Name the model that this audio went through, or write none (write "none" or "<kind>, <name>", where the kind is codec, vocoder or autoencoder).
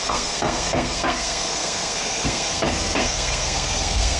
codec, SNAC